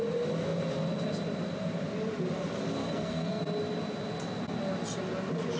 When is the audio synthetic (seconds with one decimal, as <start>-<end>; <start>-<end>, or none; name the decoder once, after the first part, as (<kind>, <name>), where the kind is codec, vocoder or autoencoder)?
2.8-3.4 (codec, SNAC)